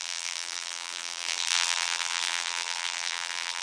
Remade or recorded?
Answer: remade